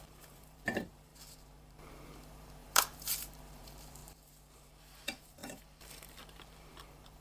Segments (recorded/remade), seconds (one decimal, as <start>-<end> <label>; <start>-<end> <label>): 0.0-7.2 remade

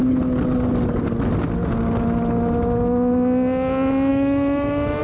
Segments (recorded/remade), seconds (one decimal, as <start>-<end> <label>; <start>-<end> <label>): 0.0-4.1 recorded; 4.1-5.0 remade

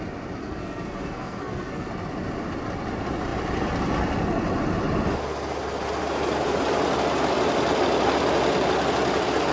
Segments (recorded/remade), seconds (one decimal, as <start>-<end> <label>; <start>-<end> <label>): 0.0-0.4 recorded; 0.4-1.9 remade; 1.9-9.5 recorded

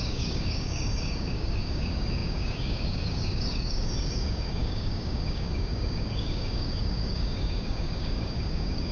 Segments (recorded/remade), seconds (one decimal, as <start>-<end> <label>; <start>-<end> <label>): 0.0-8.9 remade

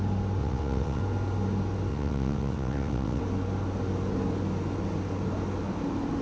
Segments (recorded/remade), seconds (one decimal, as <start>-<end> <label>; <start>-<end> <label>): 0.0-0.4 recorded; 0.4-1.0 remade; 1.0-1.9 recorded; 1.9-3.2 remade; 3.2-6.2 recorded

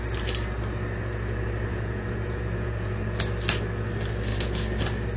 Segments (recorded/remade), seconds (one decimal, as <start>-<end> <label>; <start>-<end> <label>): 0.0-1.7 recorded; 1.7-3.0 remade; 3.0-5.2 recorded

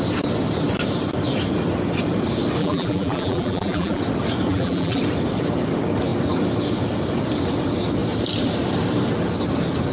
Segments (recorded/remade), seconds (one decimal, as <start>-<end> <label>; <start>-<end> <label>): 0.0-2.6 recorded; 2.6-4.0 remade; 4.0-4.5 recorded; 4.5-5.0 remade; 5.0-9.9 recorded

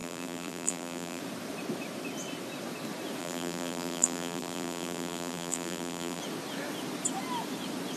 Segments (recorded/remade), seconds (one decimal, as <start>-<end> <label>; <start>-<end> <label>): 0.0-1.2 remade; 1.2-3.2 recorded; 3.2-6.2 remade; 6.2-8.0 recorded